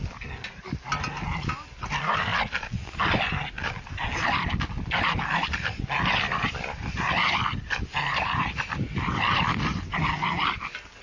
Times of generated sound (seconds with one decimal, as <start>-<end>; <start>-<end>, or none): none